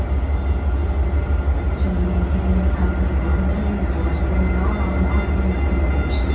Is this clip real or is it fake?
real